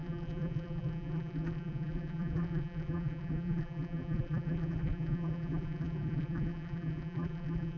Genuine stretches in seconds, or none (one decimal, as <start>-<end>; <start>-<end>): none